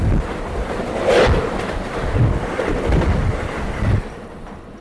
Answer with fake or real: real